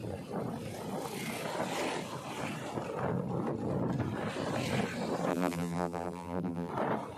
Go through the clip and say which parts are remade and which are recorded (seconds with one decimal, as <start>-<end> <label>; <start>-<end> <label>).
0.0-5.3 recorded; 5.3-6.7 remade; 6.7-7.2 recorded